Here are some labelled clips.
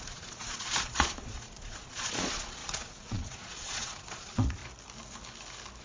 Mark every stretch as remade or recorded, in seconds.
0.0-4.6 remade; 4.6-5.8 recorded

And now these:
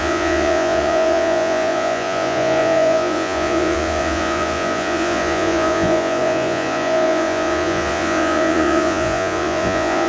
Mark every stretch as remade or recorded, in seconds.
0.0-10.1 remade

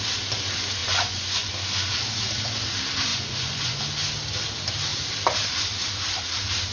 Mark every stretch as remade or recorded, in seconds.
0.0-0.8 recorded; 0.8-1.5 remade; 1.5-3.1 recorded; 3.1-3.8 remade; 3.8-6.7 recorded

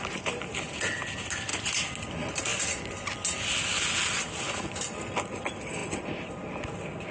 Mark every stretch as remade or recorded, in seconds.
0.0-7.1 recorded